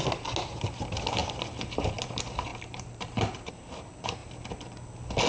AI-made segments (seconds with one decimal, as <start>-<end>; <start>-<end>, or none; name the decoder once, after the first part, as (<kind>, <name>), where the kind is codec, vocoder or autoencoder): 2.5-3.5 (vocoder, BigVGAN v2)